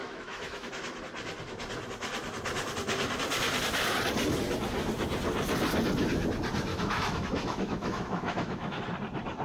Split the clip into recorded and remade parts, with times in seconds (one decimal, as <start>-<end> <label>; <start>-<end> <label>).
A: 0.0-0.7 remade; 0.7-6.7 recorded; 6.7-8.8 remade; 8.8-9.4 recorded